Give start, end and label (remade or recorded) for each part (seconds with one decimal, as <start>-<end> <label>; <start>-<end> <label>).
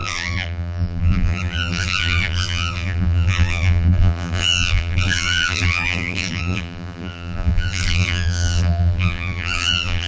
0.0-10.1 remade